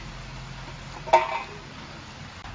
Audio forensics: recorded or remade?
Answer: recorded